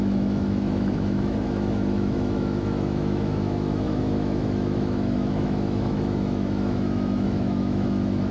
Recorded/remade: remade